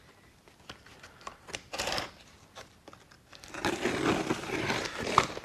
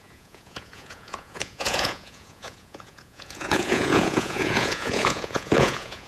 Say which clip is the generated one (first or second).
second